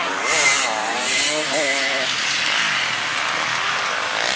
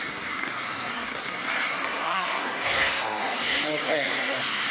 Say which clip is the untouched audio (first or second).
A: first